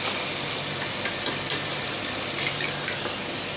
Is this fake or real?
real